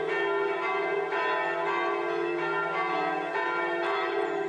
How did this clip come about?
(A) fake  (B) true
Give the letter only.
B